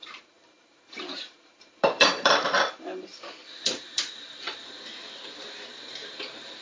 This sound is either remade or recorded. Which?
remade